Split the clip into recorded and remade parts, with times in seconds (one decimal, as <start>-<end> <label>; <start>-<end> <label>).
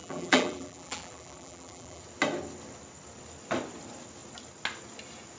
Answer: 0.0-2.0 remade; 2.0-5.4 recorded